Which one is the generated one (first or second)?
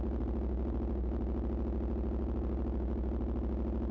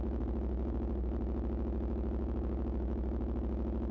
second